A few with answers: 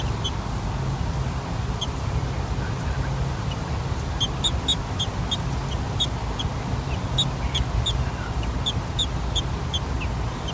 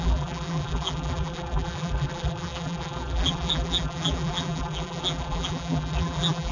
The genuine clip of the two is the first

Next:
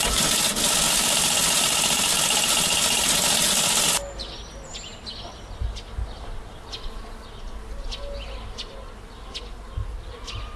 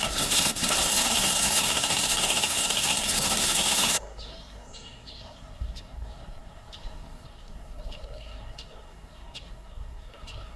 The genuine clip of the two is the first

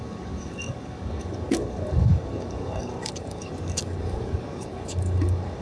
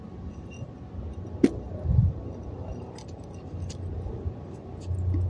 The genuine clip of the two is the second